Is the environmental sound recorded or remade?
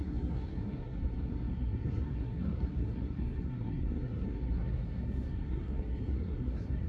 remade